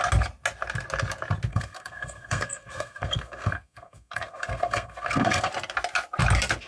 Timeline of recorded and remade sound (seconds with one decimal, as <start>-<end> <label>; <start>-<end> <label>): 0.0-1.5 recorded; 1.5-5.5 remade; 5.5-6.7 recorded

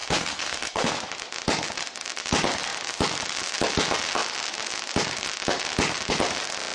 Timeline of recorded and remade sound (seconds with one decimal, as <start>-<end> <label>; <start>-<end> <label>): 0.0-0.9 remade; 0.9-6.7 recorded

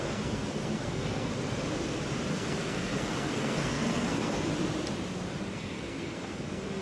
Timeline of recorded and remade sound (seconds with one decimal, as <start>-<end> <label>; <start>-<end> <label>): 0.0-1.3 remade; 1.3-2.3 recorded; 2.3-4.5 remade; 4.5-5.5 recorded; 5.5-6.8 remade

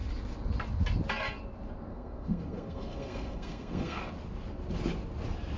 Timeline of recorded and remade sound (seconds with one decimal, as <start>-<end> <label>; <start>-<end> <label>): 0.0-1.9 recorded; 1.9-4.0 remade; 4.0-5.6 recorded